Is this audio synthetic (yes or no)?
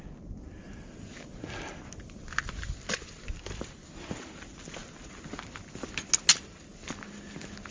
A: no